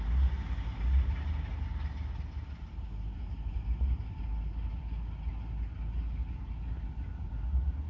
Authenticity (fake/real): real